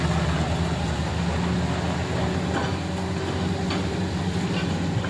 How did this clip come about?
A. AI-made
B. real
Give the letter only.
B